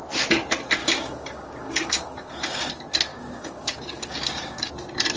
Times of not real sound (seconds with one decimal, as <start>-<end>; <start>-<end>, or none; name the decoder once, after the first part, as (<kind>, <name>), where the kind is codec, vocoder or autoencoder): 0.8-2.7 (codec, DAC); 3.1-4.7